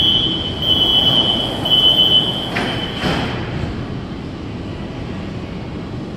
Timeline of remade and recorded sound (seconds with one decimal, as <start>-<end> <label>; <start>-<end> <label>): 0.0-6.2 recorded

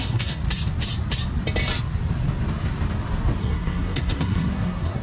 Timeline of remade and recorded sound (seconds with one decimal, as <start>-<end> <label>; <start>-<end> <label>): 0.0-0.4 remade; 0.4-3.4 recorded; 3.4-5.0 remade

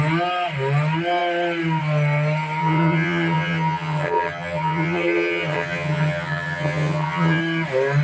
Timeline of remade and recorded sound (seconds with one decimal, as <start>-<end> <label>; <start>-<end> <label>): 0.0-2.6 recorded; 2.6-7.4 remade; 7.4-8.0 recorded

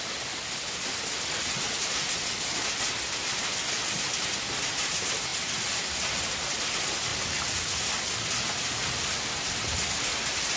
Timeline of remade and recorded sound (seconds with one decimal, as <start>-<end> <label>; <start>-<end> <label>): 0.0-7.1 recorded; 7.1-7.6 remade; 7.6-10.6 recorded

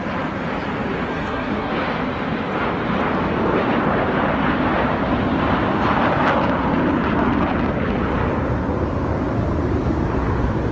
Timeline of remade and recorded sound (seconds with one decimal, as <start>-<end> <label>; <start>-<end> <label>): 0.0-1.1 recorded; 1.1-1.7 remade; 1.7-10.7 recorded

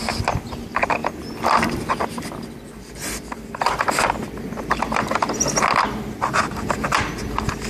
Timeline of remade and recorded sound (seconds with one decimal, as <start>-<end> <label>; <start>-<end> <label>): 0.0-1.0 recorded; 1.0-5.6 remade; 5.6-7.7 recorded

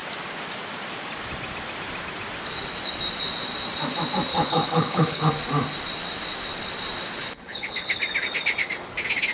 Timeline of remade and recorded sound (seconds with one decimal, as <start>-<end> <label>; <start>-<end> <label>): 0.0-4.3 recorded; 4.3-5.3 remade; 5.3-7.2 recorded; 7.2-8.0 remade; 8.0-9.3 recorded

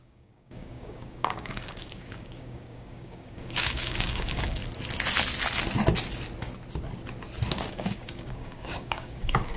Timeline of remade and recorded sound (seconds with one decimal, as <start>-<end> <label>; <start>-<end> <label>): 0.0-4.6 remade; 4.6-7.5 recorded; 7.5-9.6 remade